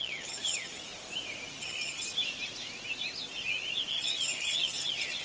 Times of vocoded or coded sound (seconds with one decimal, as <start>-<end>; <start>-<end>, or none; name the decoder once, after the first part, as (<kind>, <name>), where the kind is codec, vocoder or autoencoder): 0.0-0.9 (vocoder, HiFi-GAN); 1.5-2.1; 3.9-5.2